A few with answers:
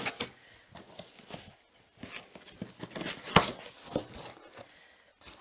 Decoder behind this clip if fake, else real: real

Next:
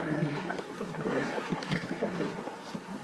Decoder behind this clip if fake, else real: fake, codec, SNAC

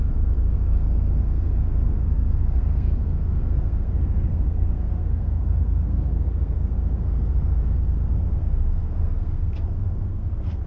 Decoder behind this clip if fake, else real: fake, codec, SNAC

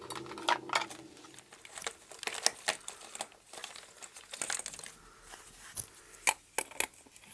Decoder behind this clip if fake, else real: real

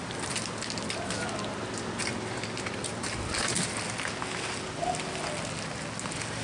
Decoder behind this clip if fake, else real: real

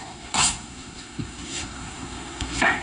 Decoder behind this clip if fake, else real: fake, codec, SNAC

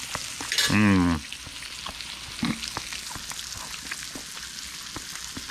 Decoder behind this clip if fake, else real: real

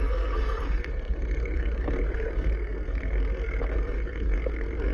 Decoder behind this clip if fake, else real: fake, codec, SNAC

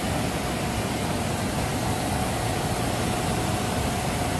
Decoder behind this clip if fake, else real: real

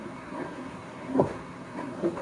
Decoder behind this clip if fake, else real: fake, codec, SNAC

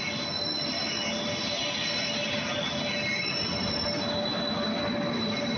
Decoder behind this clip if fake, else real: real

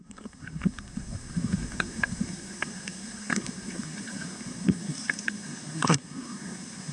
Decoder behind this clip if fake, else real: fake, codec, SNAC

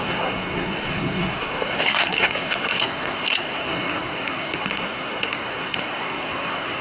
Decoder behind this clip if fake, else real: fake, codec, SNAC